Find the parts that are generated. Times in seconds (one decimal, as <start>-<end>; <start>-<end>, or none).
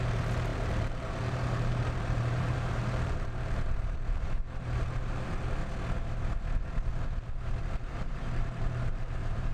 0.0-5.6; 7.6-9.5